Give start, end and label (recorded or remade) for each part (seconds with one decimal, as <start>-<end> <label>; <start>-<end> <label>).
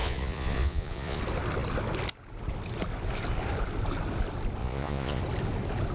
0.0-1.2 remade; 1.2-4.6 recorded; 4.6-5.2 remade; 5.2-5.9 recorded